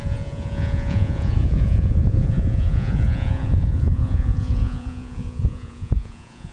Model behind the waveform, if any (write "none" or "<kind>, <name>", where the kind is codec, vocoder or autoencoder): vocoder, Vocos